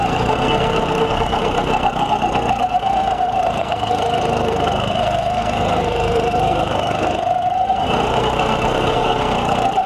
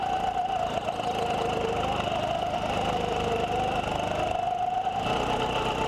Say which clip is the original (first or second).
second